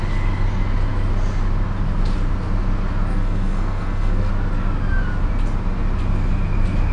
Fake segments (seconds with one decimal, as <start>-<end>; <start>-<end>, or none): 3.1-4.3